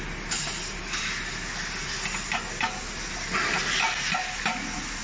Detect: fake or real real